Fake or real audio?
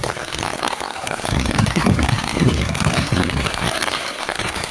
fake